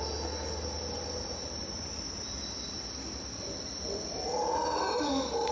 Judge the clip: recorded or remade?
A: recorded